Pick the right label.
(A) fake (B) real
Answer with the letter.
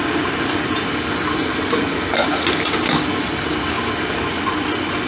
B